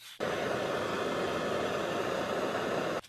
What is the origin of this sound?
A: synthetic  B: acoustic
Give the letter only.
B